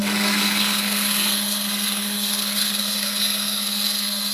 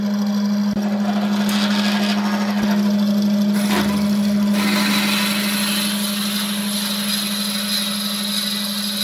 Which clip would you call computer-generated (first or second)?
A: first